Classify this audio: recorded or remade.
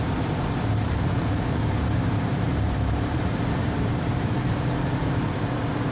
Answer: remade